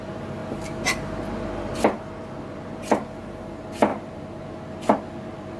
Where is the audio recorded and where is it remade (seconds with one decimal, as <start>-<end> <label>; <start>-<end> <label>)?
0.0-5.6 recorded